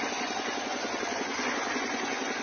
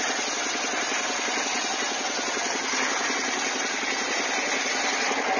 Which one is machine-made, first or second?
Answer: first